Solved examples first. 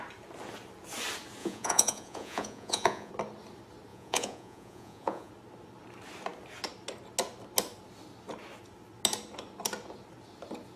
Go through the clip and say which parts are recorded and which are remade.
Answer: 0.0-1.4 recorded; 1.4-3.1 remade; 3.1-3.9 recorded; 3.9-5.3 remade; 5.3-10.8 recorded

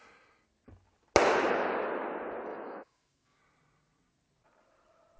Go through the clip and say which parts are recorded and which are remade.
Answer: 0.0-2.5 recorded; 2.5-3.4 remade; 3.4-5.2 recorded